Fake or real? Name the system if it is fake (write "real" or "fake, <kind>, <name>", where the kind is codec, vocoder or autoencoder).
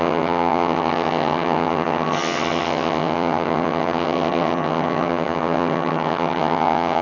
fake, vocoder, HiFi-GAN